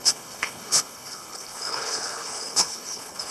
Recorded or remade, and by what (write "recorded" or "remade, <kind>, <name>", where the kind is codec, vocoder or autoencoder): remade, codec, HILCodec